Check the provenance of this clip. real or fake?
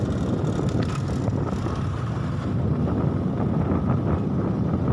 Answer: real